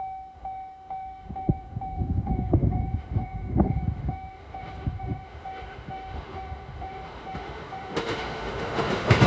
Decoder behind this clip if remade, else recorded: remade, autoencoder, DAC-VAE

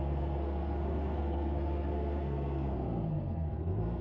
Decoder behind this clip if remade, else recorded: remade, codec, SNAC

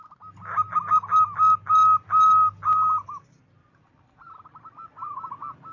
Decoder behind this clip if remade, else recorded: recorded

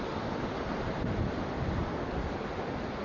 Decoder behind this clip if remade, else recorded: recorded